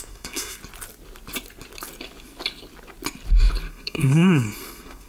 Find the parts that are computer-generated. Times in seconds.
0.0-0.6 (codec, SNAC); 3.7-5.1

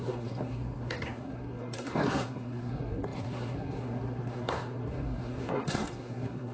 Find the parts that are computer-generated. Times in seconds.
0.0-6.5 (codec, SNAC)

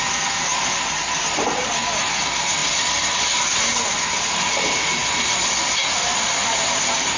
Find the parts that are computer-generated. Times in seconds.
none

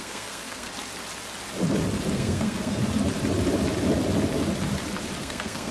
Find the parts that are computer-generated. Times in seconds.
0.0-0.7 (codec, SNAC); 2.1-2.8; 5.2-5.7

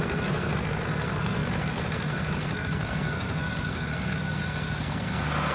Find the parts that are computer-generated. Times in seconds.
0.0-5.5 (codec, SNAC)

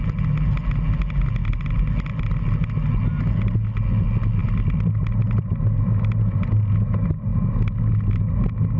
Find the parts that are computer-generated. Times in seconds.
none

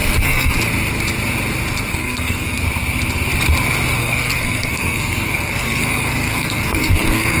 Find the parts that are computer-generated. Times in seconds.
0.0-0.5 (codec, SNAC); 1.9-2.6; 4.0-7.4